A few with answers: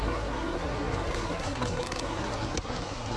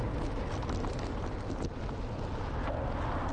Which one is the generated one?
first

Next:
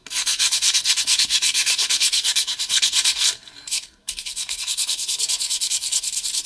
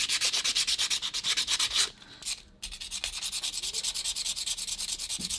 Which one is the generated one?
first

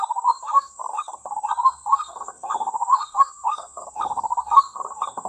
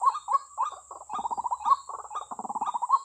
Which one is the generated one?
first